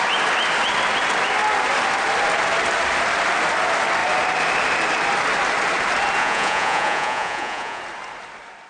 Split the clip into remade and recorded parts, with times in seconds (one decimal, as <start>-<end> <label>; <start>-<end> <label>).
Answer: 0.0-6.2 recorded; 6.2-7.8 remade; 7.8-8.7 recorded